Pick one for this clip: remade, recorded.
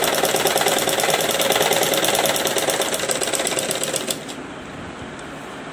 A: recorded